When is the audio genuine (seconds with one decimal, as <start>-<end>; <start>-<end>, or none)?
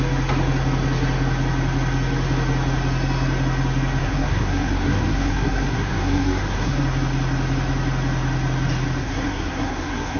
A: 0.0-4.0; 6.8-9.0